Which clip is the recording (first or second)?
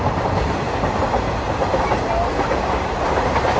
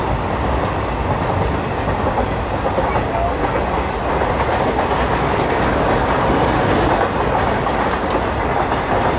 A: second